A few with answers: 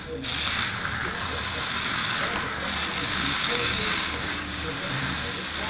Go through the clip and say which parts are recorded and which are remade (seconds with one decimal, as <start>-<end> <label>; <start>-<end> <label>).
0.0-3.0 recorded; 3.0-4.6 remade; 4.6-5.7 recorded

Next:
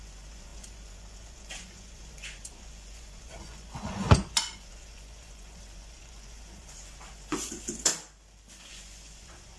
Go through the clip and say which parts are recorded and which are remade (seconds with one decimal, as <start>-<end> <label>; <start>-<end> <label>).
0.0-7.9 remade; 7.9-8.7 recorded; 8.7-9.6 remade

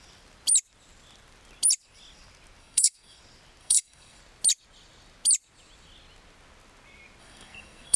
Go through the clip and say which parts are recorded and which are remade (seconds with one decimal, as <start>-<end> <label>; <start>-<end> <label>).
0.0-2.6 recorded; 2.6-3.2 remade; 3.2-3.6 recorded; 3.6-4.2 remade; 4.2-7.2 recorded; 7.2-8.0 remade

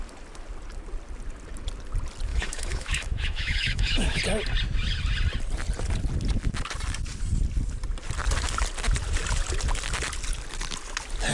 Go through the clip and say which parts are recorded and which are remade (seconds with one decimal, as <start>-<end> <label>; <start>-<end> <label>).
0.0-2.3 recorded; 2.3-4.2 remade; 4.2-11.3 recorded

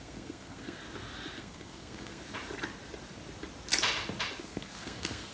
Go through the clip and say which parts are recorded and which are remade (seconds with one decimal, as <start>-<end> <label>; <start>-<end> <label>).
0.0-0.8 remade; 0.8-1.4 recorded; 1.4-2.2 remade; 2.2-4.4 recorded; 4.4-5.3 remade

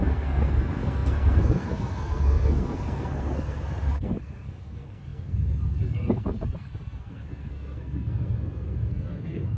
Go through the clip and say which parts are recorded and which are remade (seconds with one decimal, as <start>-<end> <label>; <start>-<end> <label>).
0.0-9.6 remade

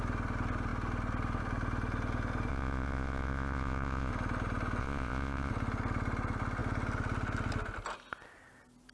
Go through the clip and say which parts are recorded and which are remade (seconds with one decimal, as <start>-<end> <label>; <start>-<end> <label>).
0.0-2.5 recorded; 2.5-4.1 remade; 4.1-4.8 recorded; 4.8-5.5 remade; 5.5-8.9 recorded

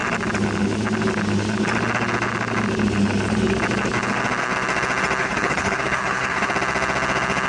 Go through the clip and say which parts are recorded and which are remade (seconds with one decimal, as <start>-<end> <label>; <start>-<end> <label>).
0.0-5.2 recorded; 5.2-6.5 remade; 6.5-7.5 recorded